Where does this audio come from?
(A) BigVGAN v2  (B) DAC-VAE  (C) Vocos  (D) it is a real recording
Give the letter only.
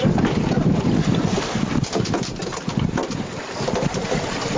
D